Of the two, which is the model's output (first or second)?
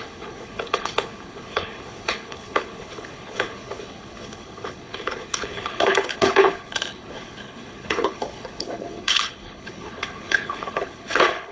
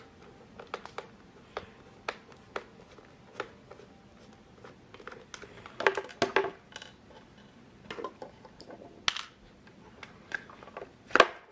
first